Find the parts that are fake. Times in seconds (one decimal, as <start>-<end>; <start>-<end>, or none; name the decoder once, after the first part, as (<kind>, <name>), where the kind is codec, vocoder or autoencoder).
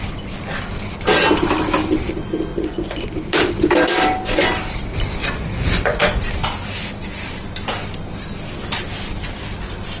2.5-3.1 (vocoder, Vocos); 5.2-6.2